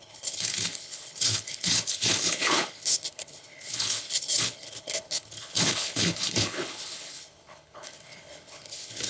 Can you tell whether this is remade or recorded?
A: remade